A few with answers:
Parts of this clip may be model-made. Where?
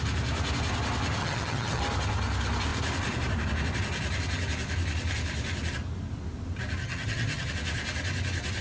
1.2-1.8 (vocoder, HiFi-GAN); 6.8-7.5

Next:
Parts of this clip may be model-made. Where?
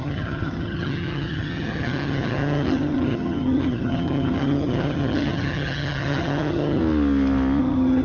0.0-6.8 (vocoder, HiFi-GAN); 7.6-8.0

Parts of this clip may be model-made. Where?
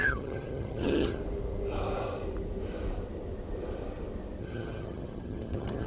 0.0-1.2 (vocoder, HiFi-GAN); 4.4-5.9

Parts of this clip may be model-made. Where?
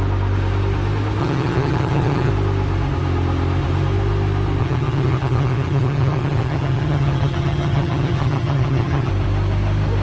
1.2-2.3 (vocoder, HiFi-GAN); 4.6-9.1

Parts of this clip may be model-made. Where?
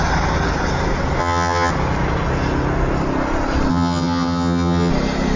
1.2-1.7 (vocoder, HiFi-GAN); 3.7-4.9